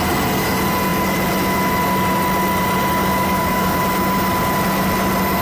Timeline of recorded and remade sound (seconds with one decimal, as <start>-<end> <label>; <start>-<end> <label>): 0.0-3.0 recorded; 3.0-3.8 remade; 3.8-5.4 recorded